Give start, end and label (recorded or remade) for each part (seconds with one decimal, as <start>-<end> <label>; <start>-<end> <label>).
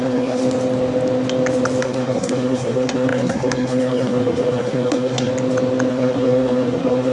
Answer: 0.0-0.4 remade; 0.4-1.8 recorded; 1.8-5.3 remade; 5.3-5.9 recorded; 5.9-7.1 remade